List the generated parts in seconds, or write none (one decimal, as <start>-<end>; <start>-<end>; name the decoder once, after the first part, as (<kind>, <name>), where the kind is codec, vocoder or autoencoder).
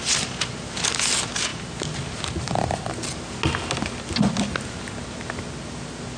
0.0-0.9 (vocoder, BigVGAN v2); 1.5-2.9